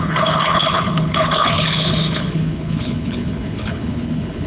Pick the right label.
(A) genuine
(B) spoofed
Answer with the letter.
B